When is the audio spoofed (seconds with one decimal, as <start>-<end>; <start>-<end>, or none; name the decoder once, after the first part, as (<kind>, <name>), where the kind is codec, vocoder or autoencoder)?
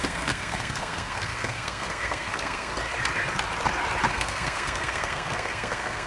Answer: 0.0-2.7 (codec, SNAC); 4.1-6.1